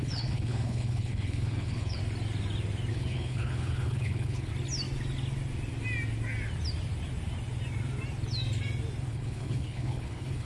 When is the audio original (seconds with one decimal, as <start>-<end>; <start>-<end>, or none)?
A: 2.0-2.9; 4.5-9.1

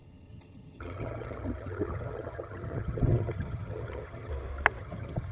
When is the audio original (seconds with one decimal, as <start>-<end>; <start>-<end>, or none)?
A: 4.3-4.8

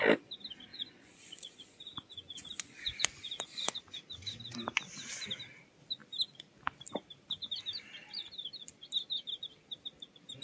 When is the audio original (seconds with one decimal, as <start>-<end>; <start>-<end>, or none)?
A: 0.0-0.7; 3.8-10.4

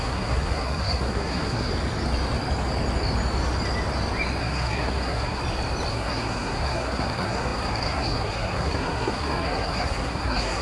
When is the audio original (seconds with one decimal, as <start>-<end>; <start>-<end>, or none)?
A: 1.7-4.4; 5.4-5.9

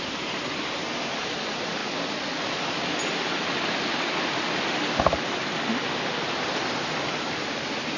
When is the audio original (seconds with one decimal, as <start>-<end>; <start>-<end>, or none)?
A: 1.8-6.4

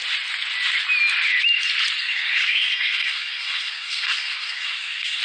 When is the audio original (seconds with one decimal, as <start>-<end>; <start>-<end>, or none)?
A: 0.0-2.0